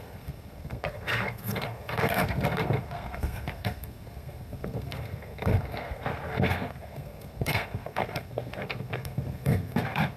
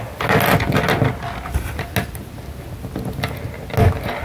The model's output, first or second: first